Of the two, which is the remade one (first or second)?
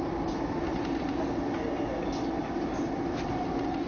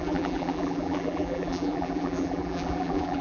second